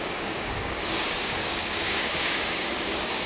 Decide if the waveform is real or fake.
fake